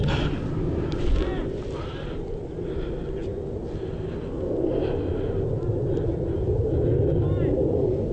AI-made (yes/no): no